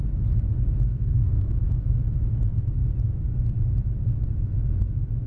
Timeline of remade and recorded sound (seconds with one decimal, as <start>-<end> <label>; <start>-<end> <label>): 0.0-0.9 recorded; 0.9-1.9 remade; 1.9-5.3 recorded

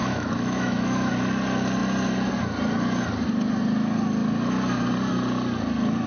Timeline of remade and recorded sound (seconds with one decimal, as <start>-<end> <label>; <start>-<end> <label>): 0.0-1.1 remade; 1.1-6.1 recorded